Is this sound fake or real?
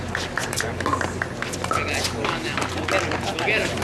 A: real